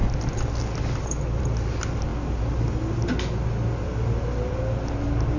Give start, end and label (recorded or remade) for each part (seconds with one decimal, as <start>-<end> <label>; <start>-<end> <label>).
0.0-5.4 recorded